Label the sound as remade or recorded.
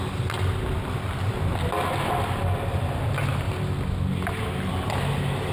recorded